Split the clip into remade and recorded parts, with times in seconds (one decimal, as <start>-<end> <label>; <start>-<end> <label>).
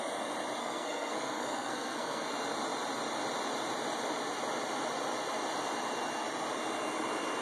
0.0-0.6 recorded; 0.6-2.3 remade; 2.3-7.4 recorded